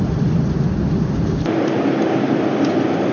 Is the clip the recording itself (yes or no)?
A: yes